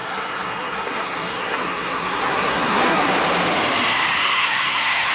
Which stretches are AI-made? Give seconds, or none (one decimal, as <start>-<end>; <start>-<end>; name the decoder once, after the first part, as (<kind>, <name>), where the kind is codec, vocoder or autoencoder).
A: 0.0-3.1 (codec, SNAC); 4.2-5.1